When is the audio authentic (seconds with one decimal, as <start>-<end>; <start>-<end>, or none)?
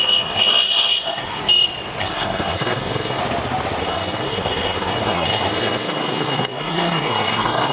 1.4-2.0; 3.2-3.8